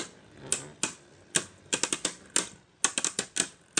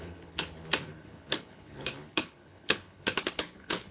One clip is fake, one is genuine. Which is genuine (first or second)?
first